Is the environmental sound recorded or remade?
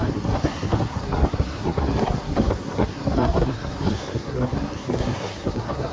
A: remade